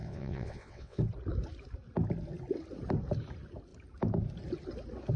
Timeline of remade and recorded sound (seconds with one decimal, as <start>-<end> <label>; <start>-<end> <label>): 0.0-1.0 remade; 1.0-5.2 recorded